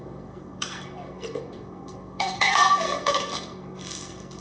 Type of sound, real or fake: fake